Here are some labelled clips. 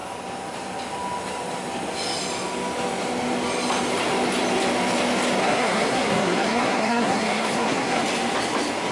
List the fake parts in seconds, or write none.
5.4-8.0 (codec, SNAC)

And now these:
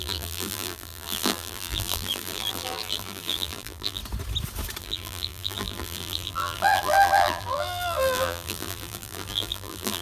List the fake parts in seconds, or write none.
0.0-4.0 (vocoder, BigVGAN v2); 4.8-10.0

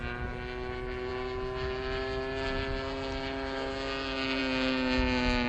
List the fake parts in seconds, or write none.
none

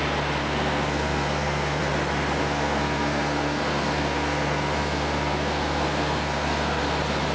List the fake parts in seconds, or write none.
0.4-1.8 (codec, SNAC); 2.4-6.8

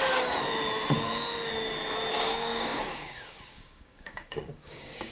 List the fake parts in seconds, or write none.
2.1-5.1 (codec, DAC)

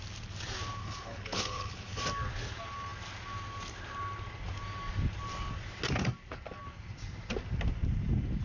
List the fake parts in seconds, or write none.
0.8-2.0 (codec, HILCodec)